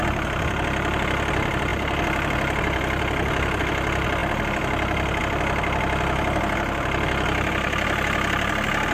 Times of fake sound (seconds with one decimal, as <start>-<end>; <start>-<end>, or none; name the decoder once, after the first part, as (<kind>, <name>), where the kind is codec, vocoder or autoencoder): none